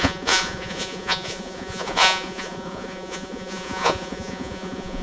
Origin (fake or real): fake